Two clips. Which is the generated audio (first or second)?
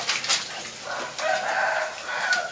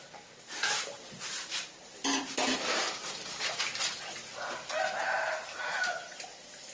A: second